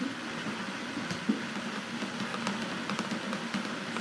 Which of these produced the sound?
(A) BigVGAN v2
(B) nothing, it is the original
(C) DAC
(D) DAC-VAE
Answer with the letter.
B